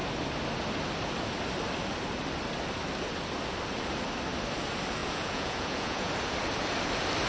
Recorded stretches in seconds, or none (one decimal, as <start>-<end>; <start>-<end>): 0.0-5.0; 6.1-7.3